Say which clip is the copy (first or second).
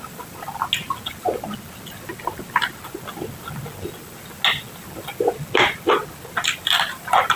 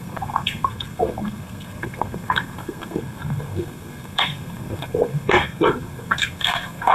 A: second